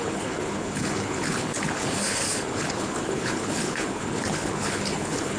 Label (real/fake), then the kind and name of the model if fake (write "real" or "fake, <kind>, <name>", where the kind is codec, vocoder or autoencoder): fake, codec, HILCodec